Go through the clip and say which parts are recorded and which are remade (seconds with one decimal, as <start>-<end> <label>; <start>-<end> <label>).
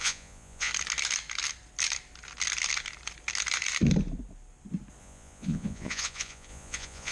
0.0-0.7 remade; 0.7-5.0 recorded; 5.0-7.1 remade